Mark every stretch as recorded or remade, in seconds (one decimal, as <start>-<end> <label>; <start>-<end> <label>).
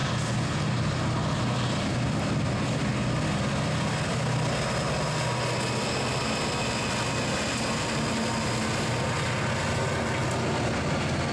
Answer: 0.0-11.3 recorded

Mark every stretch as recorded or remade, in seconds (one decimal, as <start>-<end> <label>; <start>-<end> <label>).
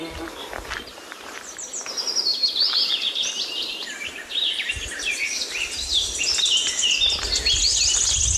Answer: 0.0-0.9 recorded; 0.9-1.8 remade; 1.8-2.3 recorded; 2.3-6.2 remade; 6.2-8.4 recorded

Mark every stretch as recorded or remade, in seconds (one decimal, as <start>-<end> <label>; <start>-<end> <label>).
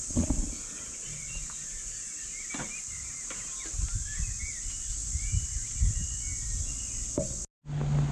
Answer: 0.0-8.1 recorded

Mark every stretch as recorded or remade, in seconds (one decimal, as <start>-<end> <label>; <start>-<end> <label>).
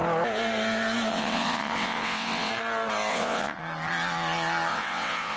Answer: 0.0-1.1 recorded; 1.1-2.5 remade; 2.5-3.1 recorded; 3.1-3.6 remade; 3.6-4.7 recorded; 4.7-5.4 remade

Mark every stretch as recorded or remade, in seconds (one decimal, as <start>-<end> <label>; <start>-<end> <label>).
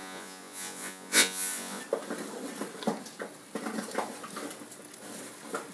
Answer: 0.0-1.8 remade; 1.8-5.7 recorded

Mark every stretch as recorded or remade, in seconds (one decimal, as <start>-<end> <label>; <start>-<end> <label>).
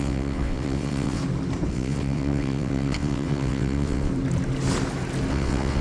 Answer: 0.0-1.2 remade; 1.2-1.7 recorded; 1.7-4.1 remade; 4.1-5.3 recorded; 5.3-5.8 remade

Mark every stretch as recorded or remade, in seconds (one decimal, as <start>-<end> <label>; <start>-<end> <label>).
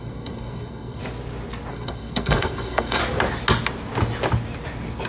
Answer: 0.0-1.0 remade; 1.0-1.7 recorded; 1.7-3.0 remade; 3.0-5.1 recorded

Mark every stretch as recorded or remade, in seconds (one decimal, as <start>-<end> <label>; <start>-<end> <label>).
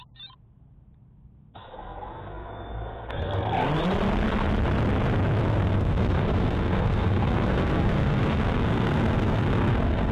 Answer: 0.0-1.5 recorded; 1.5-3.7 remade; 3.7-5.4 recorded; 5.4-10.1 remade